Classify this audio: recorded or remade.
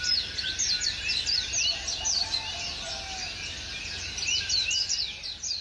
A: recorded